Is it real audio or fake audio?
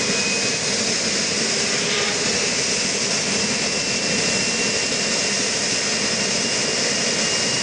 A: real